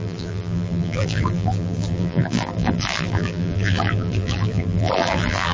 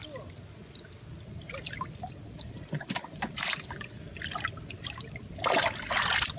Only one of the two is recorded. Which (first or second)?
second